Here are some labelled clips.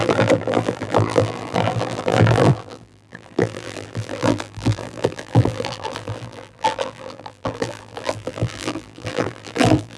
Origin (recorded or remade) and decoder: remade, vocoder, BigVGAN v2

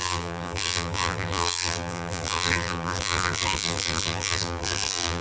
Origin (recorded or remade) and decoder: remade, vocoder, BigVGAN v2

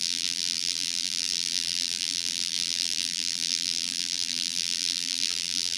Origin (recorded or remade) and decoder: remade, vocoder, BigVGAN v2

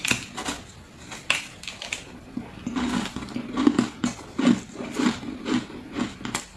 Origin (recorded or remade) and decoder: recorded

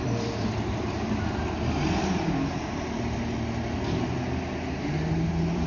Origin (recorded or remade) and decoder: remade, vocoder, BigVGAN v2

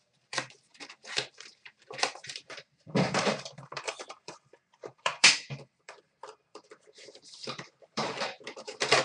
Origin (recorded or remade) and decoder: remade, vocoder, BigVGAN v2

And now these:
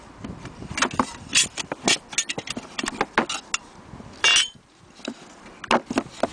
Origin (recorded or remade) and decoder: recorded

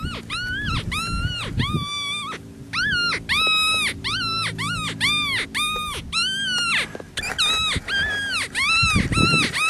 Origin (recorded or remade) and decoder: recorded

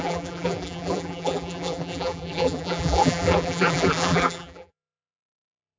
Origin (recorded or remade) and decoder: remade, vocoder, BigVGAN v2